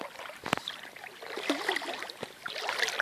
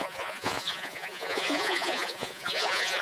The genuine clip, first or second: first